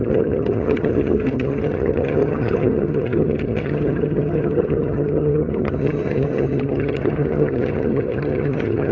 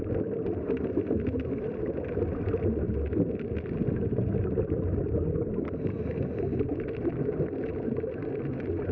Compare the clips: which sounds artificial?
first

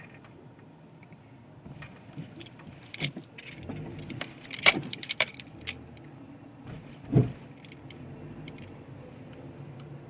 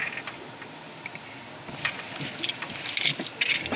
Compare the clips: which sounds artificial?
first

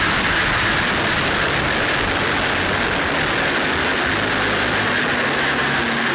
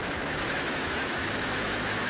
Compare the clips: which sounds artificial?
second